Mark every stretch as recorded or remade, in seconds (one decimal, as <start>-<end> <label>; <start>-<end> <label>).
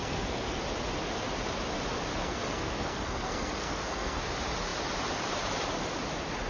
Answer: 0.0-0.6 remade; 0.6-2.2 recorded; 2.2-4.2 remade; 4.2-6.5 recorded